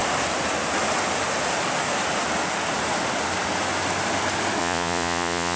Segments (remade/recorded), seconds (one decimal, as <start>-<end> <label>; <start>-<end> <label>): 0.0-4.6 recorded; 4.6-5.6 remade